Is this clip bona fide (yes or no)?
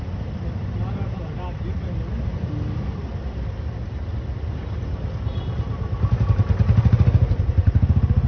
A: yes